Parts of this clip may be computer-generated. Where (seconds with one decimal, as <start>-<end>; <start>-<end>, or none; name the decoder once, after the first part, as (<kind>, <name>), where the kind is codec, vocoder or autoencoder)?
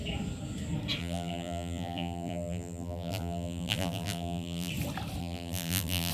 1.0-4.7 (vocoder, BigVGAN v2); 5.2-6.1